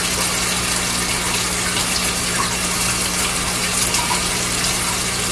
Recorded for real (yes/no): yes